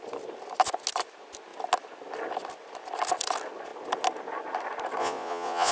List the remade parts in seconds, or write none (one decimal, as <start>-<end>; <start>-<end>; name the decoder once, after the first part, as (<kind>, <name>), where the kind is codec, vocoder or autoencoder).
5.0-5.7 (vocoder, Vocos)